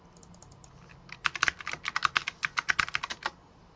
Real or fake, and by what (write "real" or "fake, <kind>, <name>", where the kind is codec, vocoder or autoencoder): real